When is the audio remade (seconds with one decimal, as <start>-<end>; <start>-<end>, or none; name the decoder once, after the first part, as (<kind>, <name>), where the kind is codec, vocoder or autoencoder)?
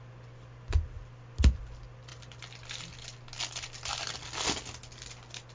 none